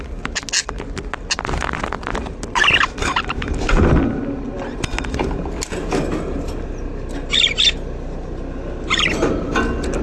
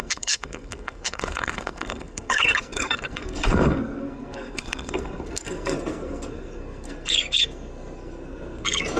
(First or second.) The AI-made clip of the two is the second